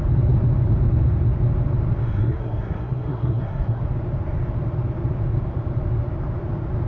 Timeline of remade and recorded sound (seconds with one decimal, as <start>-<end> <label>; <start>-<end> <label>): 0.0-2.0 recorded; 2.0-3.8 remade; 3.8-6.9 recorded